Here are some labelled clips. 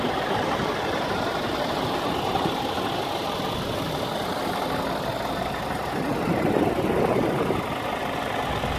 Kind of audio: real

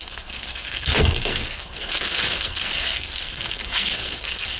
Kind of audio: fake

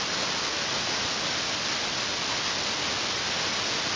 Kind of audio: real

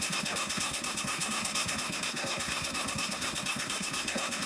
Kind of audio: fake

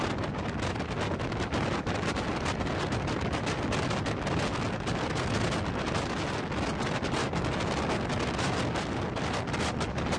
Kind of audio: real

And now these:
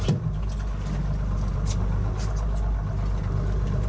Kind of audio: real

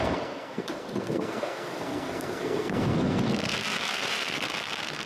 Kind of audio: fake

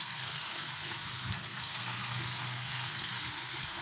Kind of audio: fake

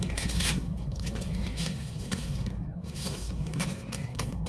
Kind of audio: fake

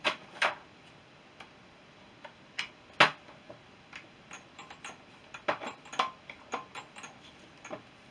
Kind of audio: real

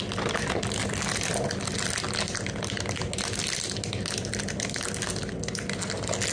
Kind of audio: real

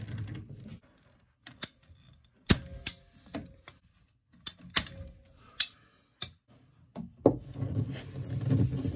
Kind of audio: real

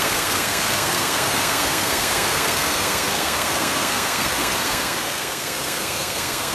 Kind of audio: fake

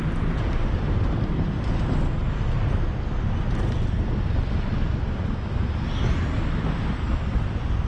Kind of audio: real